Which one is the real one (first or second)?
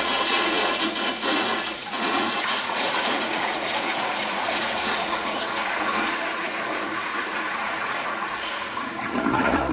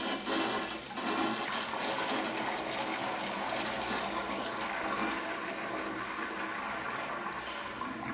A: second